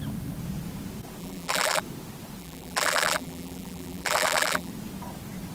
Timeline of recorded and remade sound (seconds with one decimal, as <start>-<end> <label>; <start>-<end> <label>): 0.0-1.2 recorded; 1.2-1.8 remade; 1.8-2.4 recorded; 2.4-4.7 remade; 4.7-5.5 recorded